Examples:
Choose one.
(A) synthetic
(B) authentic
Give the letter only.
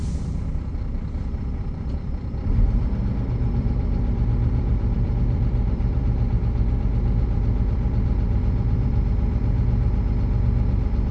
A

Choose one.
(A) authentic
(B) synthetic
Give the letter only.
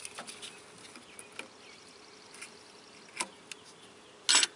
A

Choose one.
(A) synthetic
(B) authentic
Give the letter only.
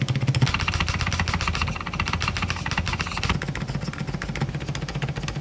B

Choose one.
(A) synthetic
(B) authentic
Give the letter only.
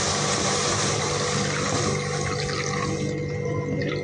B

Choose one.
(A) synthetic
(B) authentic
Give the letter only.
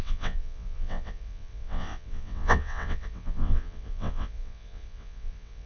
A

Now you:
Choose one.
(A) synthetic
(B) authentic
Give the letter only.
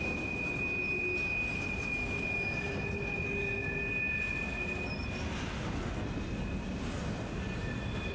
B